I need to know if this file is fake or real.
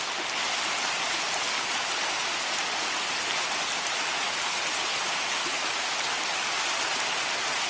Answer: real